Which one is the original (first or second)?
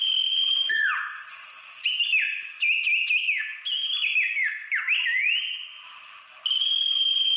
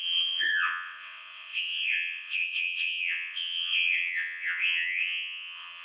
first